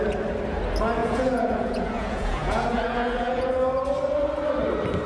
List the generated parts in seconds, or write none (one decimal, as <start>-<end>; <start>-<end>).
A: 1.0-3.5